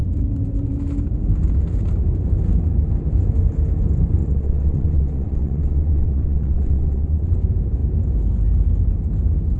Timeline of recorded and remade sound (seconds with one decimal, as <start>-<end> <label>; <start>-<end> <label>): 0.0-4.2 recorded; 4.2-7.3 remade; 7.3-9.6 recorded